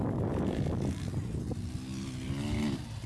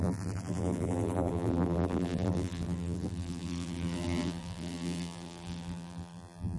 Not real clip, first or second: second